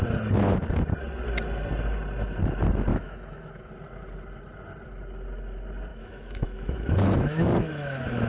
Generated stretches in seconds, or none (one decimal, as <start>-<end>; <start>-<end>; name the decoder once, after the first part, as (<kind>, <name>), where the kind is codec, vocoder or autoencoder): 2.9-3.7 (autoencoder, DAC-VAE); 5.9-8.3